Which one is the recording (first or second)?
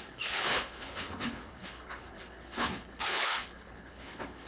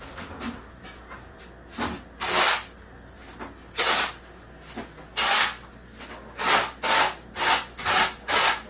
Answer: second